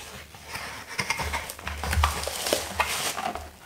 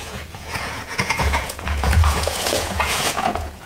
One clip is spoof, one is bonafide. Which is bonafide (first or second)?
first